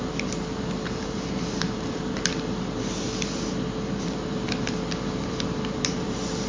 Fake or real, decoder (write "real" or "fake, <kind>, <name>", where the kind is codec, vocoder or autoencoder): fake, vocoder, BigVGAN v2